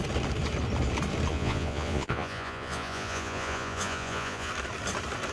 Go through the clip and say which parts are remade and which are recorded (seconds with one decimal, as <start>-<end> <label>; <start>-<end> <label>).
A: 0.0-1.3 recorded; 1.3-4.5 remade; 4.5-5.3 recorded